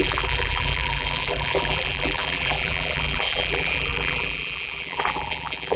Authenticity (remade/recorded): remade